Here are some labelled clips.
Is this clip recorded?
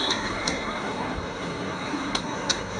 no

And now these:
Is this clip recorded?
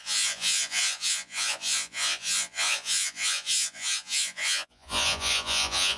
no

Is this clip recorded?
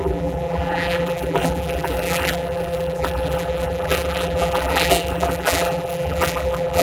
no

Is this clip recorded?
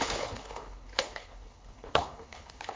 no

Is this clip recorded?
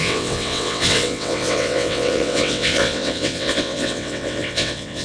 no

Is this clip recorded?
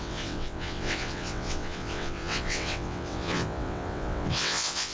no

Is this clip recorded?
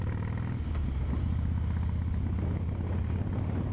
yes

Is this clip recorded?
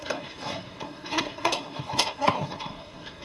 no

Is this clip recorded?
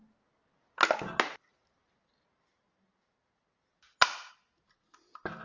yes